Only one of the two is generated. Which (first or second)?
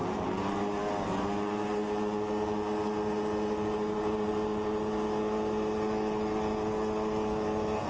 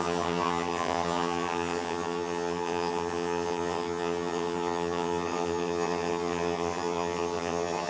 second